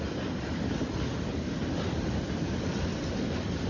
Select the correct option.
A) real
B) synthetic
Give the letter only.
A